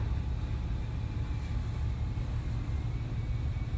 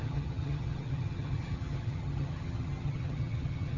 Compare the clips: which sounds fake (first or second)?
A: second